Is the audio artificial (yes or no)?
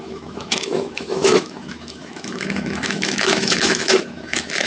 yes